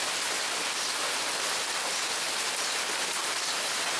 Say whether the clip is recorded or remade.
recorded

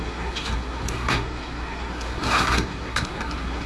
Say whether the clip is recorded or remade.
remade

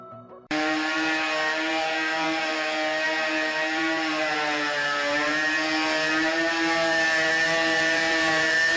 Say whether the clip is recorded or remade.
remade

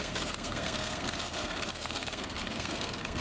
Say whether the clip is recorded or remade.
remade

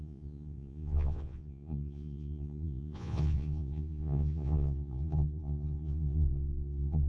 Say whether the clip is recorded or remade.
remade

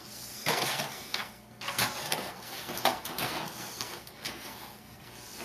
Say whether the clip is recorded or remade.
remade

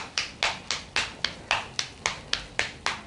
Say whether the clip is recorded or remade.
recorded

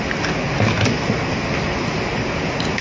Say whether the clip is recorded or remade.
recorded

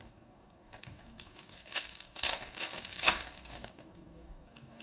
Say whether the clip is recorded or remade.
remade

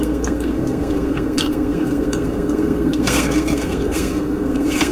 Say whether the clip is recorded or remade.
remade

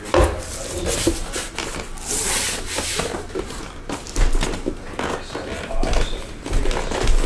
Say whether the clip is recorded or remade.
recorded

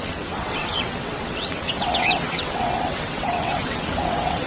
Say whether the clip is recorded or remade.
remade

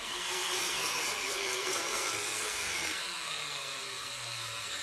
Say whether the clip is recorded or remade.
remade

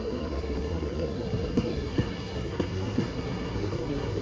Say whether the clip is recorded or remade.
remade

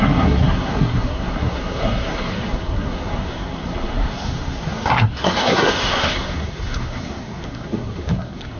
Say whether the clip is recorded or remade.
remade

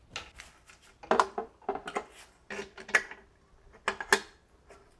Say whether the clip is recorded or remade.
recorded